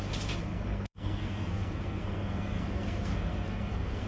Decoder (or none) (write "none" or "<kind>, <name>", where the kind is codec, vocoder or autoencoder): codec, SNAC